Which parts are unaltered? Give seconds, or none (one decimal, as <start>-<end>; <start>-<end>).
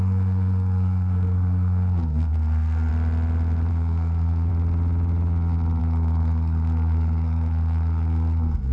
2.9-3.7; 4.5-5.8